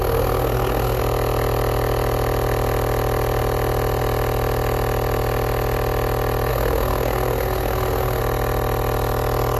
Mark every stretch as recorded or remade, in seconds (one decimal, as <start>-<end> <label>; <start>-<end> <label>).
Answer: 0.0-1.0 remade; 1.0-6.5 recorded; 6.5-8.2 remade; 8.2-9.6 recorded